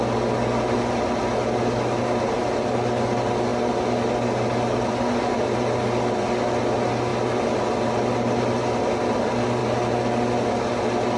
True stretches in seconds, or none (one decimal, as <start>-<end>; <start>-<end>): 0.0-11.2